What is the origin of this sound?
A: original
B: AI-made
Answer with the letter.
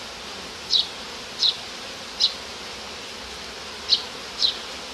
A